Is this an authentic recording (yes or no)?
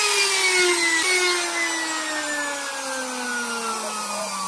yes